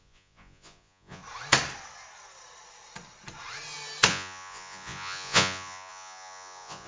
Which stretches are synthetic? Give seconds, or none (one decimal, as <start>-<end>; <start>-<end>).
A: 0.0-1.2; 4.1-6.9